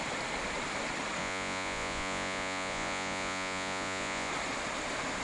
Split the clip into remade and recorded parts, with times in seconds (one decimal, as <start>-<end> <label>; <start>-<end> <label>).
0.0-1.2 recorded; 1.2-4.3 remade; 4.3-5.2 recorded